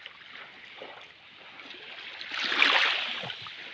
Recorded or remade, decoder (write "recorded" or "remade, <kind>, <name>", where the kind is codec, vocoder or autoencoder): recorded